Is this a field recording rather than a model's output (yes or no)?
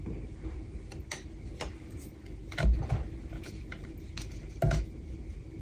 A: yes